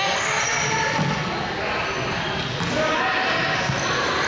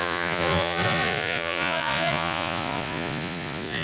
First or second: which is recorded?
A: first